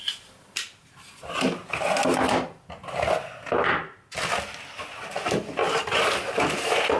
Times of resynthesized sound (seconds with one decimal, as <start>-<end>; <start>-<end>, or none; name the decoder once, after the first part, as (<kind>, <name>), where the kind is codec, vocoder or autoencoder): none